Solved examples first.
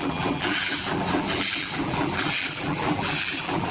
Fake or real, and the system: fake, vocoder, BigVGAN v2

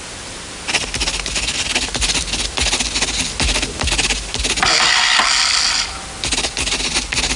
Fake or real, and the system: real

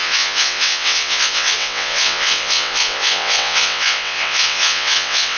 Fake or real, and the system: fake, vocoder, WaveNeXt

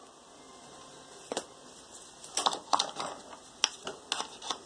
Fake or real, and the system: real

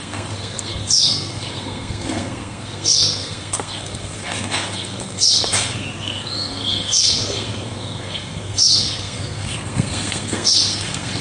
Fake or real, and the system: fake, codec, SNAC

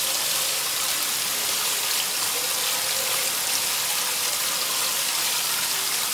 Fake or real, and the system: real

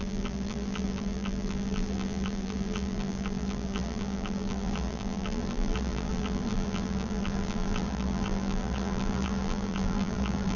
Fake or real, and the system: fake, vocoder, BigVGAN v2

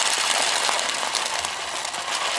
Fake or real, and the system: real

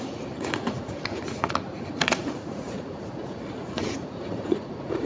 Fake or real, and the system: fake, vocoder, Vocos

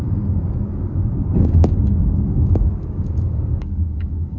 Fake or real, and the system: fake, codec, DAC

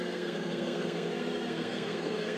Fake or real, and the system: fake, codec, SNAC